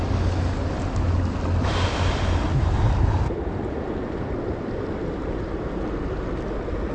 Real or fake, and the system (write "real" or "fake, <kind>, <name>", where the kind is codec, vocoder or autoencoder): real